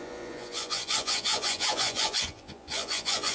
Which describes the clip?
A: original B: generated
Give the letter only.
B